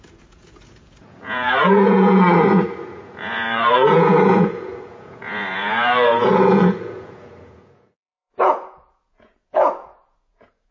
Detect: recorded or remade remade